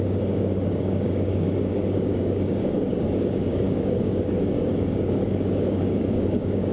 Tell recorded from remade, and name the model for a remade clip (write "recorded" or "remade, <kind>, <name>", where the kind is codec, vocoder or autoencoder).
remade, codec, DAC